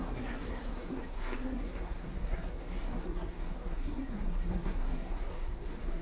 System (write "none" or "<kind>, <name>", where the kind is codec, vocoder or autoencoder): codec, SNAC